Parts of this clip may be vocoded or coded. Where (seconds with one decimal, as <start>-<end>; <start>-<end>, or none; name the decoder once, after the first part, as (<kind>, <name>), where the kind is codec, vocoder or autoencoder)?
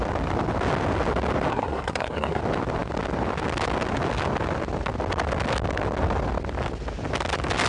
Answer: 1.5-2.4 (codec, SNAC)